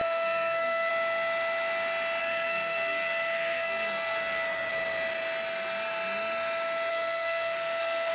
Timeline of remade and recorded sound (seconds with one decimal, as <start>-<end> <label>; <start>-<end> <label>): 0.0-0.9 remade; 0.9-2.2 recorded; 2.2-4.7 remade; 4.7-6.9 recorded; 6.9-8.1 remade